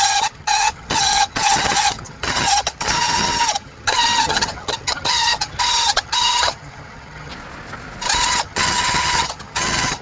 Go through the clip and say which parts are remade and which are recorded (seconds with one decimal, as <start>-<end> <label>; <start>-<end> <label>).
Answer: 0.0-7.3 remade; 7.3-8.3 recorded; 8.3-10.0 remade